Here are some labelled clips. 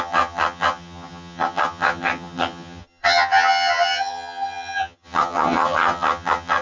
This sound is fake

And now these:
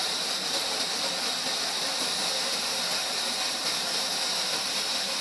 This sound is real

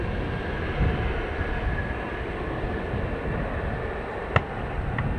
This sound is real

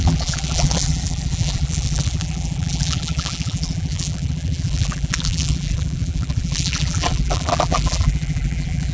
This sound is fake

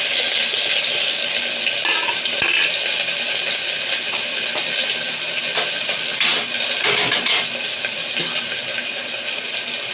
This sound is real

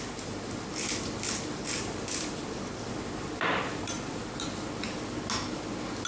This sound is real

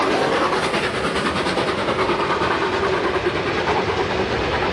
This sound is real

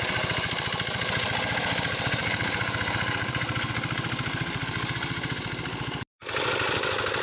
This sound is real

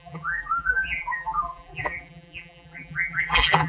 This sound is fake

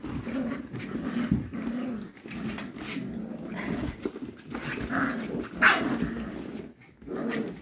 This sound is real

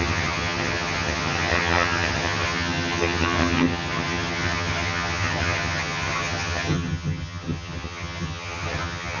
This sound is fake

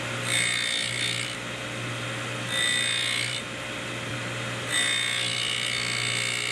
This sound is real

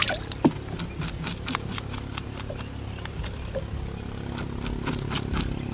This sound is real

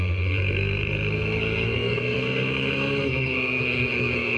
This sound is fake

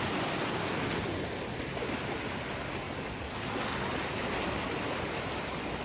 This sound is real